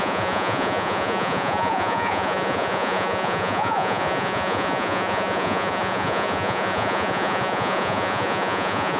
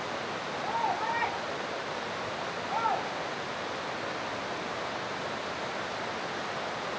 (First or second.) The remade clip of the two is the first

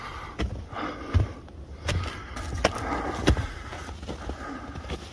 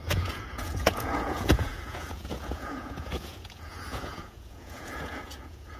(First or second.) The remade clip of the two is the second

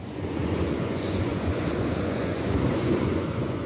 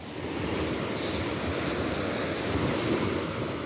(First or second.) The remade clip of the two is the first